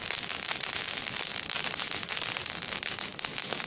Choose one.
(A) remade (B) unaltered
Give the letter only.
B